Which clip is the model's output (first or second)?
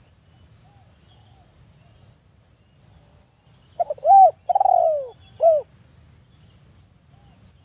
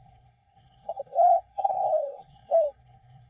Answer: second